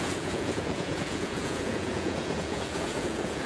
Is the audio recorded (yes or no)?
no